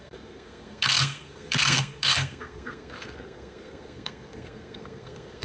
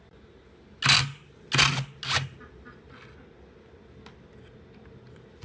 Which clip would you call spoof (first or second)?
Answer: first